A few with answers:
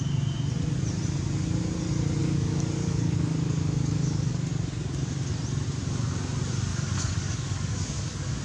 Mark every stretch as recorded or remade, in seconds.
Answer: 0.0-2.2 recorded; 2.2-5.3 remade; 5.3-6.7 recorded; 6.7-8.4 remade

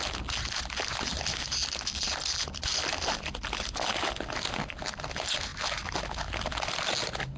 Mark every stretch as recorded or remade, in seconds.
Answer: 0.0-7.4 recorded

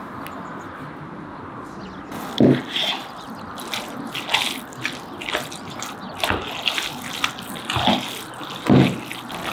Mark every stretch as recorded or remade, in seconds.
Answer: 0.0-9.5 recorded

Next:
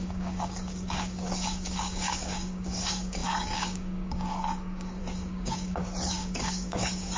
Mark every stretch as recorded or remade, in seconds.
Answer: 0.0-7.2 remade

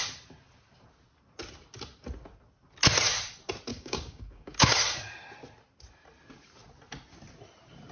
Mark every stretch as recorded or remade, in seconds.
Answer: 0.0-3.7 recorded; 3.7-4.7 remade; 4.7-7.9 recorded

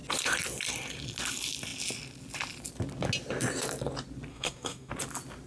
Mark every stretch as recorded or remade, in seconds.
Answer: 0.0-4.3 recorded; 4.3-4.9 remade; 4.9-5.5 recorded